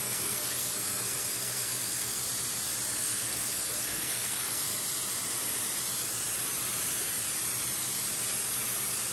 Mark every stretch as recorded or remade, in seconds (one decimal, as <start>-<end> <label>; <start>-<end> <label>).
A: 0.0-2.2 remade; 2.2-3.0 recorded; 3.0-4.7 remade; 4.7-9.1 recorded